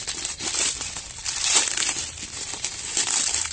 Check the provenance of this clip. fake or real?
fake